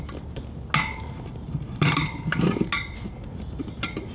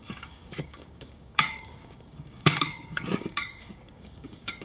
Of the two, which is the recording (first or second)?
first